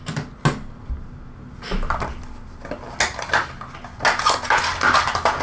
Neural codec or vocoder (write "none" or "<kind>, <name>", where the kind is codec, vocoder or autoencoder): none